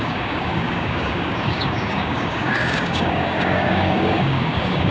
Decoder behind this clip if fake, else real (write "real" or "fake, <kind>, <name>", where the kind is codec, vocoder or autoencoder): fake, codec, DAC